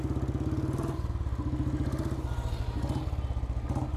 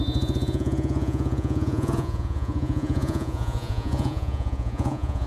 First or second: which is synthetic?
second